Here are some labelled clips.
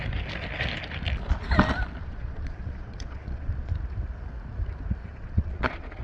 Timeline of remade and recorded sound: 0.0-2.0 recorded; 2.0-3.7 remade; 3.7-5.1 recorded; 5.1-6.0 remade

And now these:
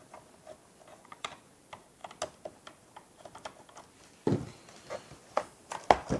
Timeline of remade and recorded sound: 0.0-0.9 recorded; 0.9-1.5 remade; 1.5-6.2 recorded

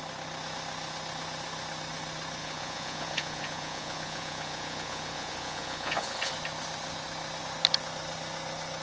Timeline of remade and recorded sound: 0.0-2.4 recorded; 2.4-6.3 remade; 6.3-8.8 recorded

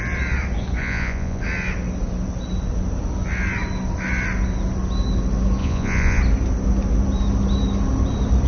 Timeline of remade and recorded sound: 0.0-0.8 recorded; 0.8-1.4 remade; 1.4-5.6 recorded; 5.6-6.2 remade; 6.2-8.5 recorded

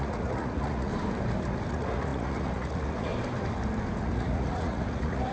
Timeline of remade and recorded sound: 0.0-0.9 remade; 0.9-1.7 recorded; 1.7-3.1 remade; 3.1-4.0 recorded; 4.0-5.3 remade

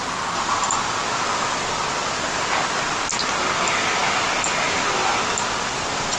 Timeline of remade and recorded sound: 0.0-6.2 recorded

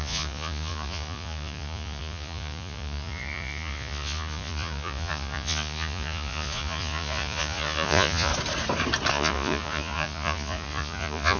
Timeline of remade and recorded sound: 0.0-8.3 remade; 8.3-9.1 recorded; 9.1-11.4 remade

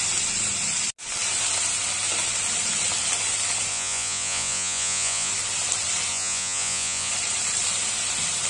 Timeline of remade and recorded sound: 0.0-3.7 recorded; 3.7-5.3 remade; 5.3-6.1 recorded; 6.1-7.1 remade; 7.1-8.5 recorded